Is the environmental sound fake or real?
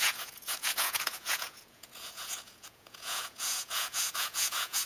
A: fake